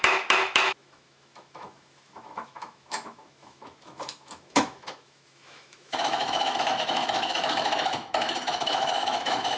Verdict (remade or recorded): remade